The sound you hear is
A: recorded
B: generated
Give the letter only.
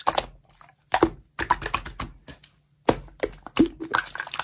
A